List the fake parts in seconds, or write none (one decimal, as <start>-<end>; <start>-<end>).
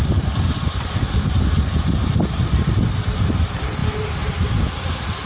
none